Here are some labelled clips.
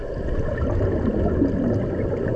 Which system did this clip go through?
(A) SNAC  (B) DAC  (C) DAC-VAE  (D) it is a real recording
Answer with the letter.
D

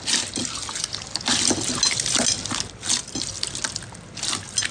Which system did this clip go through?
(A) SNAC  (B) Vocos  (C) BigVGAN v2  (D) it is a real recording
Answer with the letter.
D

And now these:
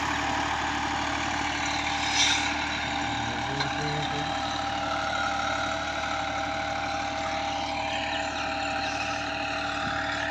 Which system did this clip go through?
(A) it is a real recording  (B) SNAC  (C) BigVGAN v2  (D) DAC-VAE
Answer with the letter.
A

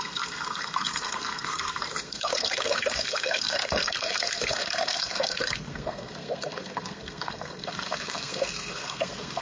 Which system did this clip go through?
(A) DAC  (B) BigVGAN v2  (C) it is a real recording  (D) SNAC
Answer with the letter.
D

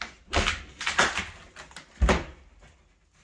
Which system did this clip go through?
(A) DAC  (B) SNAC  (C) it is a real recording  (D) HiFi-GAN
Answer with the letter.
C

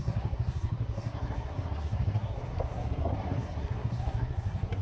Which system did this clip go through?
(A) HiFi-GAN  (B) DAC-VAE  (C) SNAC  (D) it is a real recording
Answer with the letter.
C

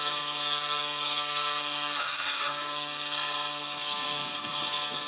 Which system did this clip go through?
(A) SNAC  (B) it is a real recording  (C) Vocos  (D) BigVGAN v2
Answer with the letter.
A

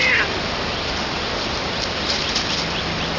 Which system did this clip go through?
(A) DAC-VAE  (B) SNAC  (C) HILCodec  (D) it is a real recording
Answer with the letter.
D